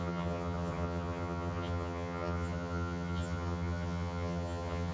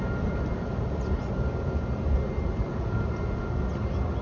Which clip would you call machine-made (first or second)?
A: first